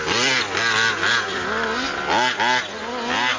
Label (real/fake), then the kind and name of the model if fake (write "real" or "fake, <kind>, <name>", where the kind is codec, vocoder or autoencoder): real